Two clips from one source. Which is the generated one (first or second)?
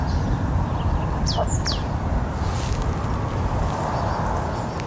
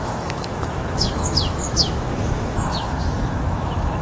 second